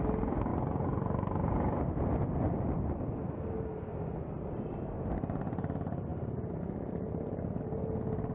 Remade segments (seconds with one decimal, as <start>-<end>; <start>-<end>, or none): none